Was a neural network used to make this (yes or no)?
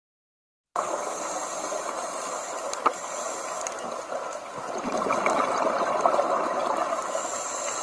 no